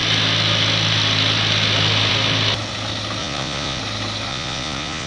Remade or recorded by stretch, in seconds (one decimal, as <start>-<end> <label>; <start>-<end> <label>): 0.0-3.2 recorded; 3.2-3.8 remade; 3.8-4.3 recorded; 4.3-5.1 remade